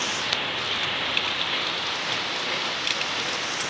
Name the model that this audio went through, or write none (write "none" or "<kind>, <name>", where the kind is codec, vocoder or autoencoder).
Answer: none